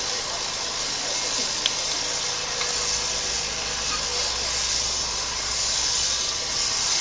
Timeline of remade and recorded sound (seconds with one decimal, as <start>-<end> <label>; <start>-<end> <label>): 0.0-7.0 recorded